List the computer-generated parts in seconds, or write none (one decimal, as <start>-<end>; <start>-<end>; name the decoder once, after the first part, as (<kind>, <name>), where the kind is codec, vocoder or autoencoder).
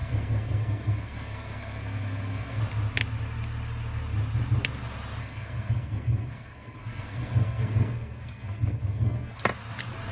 0.0-2.6 (codec, SNAC); 5.2-9.4